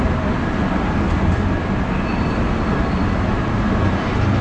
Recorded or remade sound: recorded